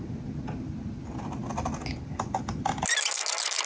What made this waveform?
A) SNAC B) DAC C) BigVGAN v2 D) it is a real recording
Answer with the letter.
D